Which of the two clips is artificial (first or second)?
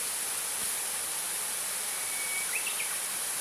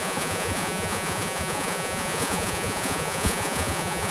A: second